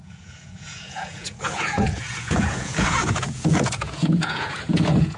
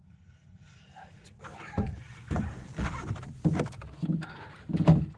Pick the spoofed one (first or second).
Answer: first